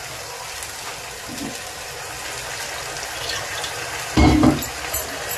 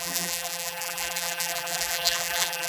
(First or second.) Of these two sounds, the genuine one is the first